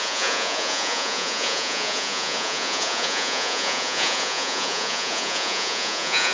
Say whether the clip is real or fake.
fake